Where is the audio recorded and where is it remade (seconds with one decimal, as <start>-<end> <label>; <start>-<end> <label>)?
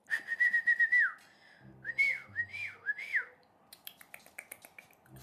0.0-5.2 recorded